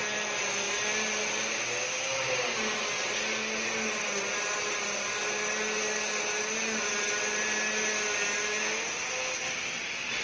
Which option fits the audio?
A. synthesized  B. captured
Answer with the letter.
B